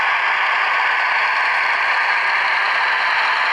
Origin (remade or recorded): recorded